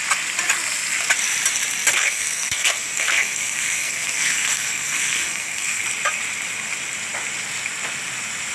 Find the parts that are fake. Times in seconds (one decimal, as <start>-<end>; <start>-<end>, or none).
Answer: 1.9-5.8

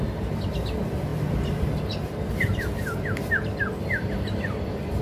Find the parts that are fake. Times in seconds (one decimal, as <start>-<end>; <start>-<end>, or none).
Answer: none

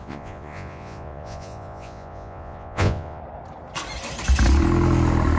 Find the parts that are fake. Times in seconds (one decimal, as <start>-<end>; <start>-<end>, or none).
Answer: 0.0-3.2

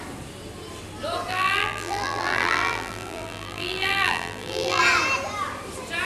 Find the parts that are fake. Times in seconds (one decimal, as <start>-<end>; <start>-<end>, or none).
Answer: 1.3-4.8

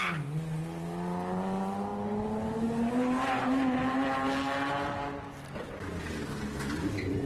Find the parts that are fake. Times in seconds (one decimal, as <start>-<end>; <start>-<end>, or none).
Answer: none

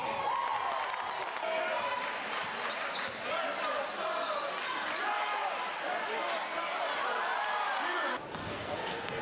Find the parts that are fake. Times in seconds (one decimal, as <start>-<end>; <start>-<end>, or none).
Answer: 8.4-9.2

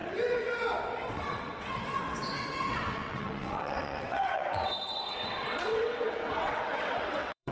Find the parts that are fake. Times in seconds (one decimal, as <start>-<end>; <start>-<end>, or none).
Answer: 0.0-7.5

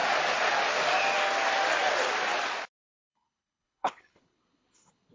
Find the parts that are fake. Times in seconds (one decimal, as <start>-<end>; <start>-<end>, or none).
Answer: 3.1-5.1